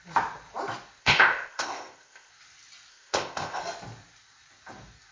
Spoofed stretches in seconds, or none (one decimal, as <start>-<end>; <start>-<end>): 1.0-2.3; 2.9-3.6